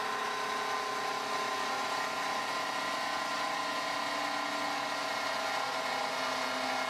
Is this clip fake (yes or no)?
no